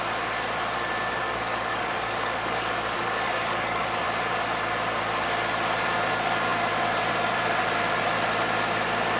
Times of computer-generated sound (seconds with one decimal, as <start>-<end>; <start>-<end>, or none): 1.2-4.0